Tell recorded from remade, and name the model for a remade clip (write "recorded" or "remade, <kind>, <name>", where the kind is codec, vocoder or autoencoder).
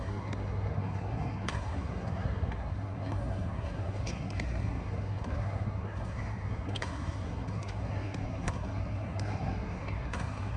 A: remade, codec, SNAC